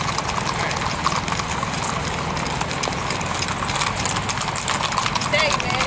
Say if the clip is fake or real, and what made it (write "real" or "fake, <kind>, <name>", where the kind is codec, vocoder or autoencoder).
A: real